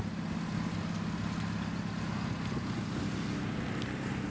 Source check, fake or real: real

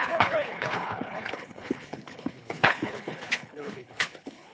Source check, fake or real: fake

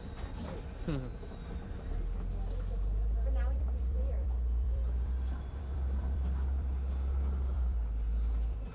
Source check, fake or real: fake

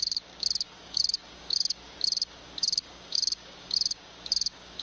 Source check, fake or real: fake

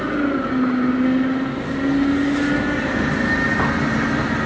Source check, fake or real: real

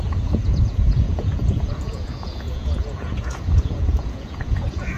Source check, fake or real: fake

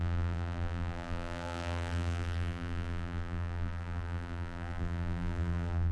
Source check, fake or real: fake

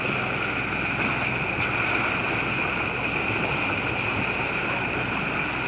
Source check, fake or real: real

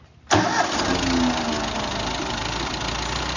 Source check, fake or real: real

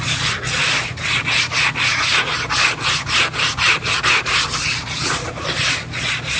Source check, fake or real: real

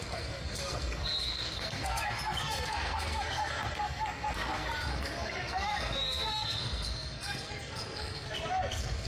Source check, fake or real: fake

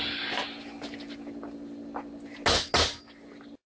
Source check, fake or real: real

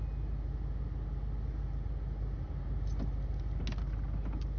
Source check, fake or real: real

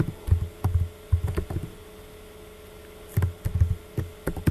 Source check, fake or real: real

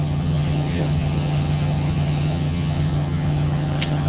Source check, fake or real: fake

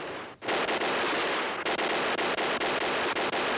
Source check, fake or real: real